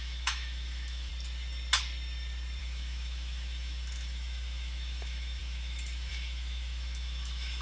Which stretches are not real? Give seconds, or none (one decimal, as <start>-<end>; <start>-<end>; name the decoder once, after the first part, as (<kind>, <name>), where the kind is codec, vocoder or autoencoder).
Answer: 0.0-1.1 (autoencoder, DAC-VAE); 2.6-7.6

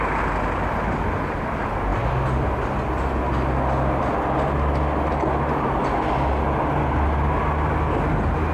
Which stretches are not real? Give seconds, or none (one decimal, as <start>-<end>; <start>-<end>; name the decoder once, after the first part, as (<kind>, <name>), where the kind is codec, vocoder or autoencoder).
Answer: none

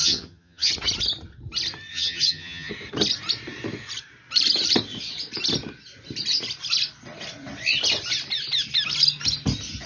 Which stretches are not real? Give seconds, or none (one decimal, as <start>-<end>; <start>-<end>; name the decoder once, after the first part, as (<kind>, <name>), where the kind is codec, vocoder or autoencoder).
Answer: 0.0-0.7 (vocoder, HiFi-GAN); 1.9-2.7